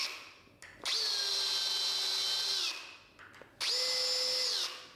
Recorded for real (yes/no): yes